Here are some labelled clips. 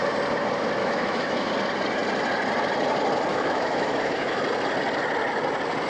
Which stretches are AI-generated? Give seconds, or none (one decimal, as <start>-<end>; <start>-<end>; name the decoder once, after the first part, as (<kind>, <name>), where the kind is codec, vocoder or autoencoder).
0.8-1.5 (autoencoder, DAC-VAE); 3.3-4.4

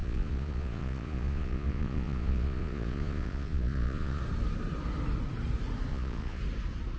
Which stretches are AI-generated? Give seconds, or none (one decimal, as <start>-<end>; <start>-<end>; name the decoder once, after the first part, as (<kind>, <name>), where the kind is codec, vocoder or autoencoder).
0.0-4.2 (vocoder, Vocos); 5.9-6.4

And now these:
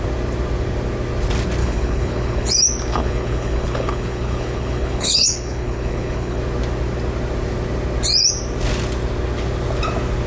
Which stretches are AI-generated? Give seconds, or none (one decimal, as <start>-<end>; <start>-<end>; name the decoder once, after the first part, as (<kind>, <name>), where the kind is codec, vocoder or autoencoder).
1.6-2.5 (codec, HILCodec); 2.9-6.4